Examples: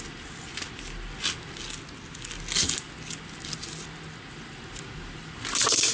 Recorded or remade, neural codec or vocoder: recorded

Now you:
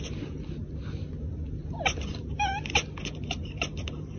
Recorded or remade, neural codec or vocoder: recorded